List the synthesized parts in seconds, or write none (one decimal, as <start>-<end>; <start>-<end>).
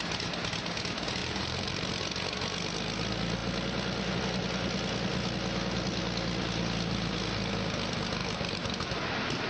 1.2-2.0; 8.2-9.0